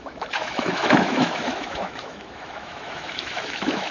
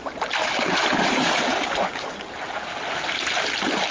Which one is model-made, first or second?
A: first